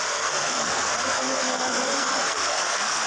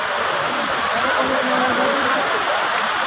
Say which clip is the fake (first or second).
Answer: first